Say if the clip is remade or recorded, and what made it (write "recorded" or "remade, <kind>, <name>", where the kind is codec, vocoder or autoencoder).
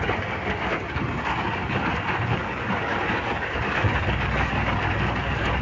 remade, codec, DAC